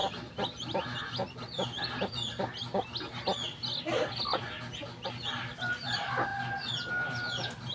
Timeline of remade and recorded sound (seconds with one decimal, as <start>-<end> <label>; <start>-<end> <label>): 0.0-4.4 recorded; 4.4-6.3 remade; 6.3-6.9 recorded; 6.9-7.7 remade